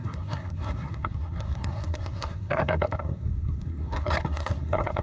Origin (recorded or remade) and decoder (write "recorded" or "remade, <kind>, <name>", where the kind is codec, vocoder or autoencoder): remade, codec, SNAC